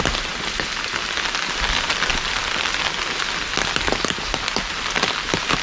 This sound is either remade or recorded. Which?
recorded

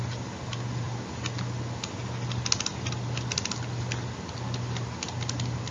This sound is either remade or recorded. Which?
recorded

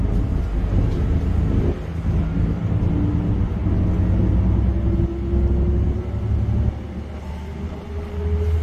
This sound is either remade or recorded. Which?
recorded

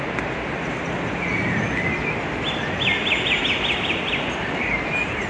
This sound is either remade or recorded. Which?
recorded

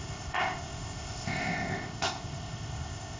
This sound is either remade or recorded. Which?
remade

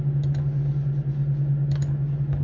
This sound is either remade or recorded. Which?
recorded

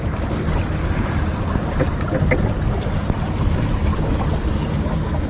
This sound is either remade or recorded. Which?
recorded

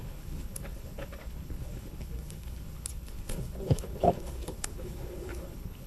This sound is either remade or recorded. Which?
remade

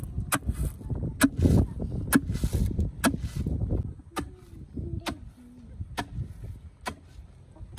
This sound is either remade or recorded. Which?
recorded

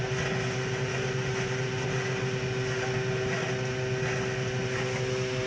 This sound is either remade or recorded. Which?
recorded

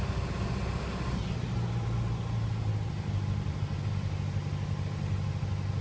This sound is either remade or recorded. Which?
recorded